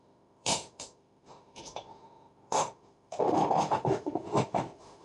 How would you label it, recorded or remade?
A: remade